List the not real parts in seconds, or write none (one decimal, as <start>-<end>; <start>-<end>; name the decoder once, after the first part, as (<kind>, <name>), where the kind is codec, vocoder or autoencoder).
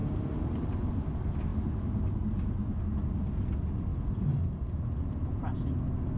0.0-0.9 (vocoder, BigVGAN v2); 3.9-4.8